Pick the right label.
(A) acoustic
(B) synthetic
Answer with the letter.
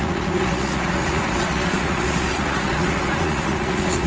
B